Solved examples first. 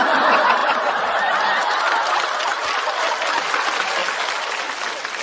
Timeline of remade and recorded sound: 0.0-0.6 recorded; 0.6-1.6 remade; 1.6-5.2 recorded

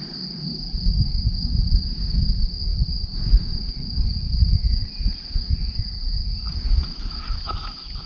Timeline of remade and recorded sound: 0.0-8.1 recorded

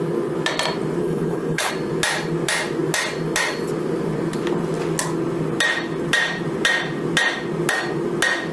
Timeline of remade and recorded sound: 0.0-1.0 recorded; 1.0-1.7 remade; 1.7-8.5 recorded